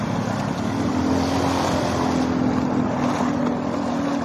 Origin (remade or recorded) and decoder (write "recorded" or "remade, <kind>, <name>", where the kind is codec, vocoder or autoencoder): recorded